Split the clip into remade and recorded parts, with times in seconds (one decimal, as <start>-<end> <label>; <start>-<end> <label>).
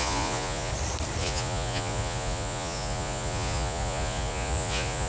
0.0-0.7 remade; 0.7-1.2 recorded; 1.2-5.1 remade